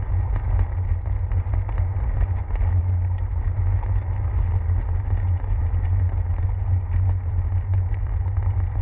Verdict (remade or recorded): recorded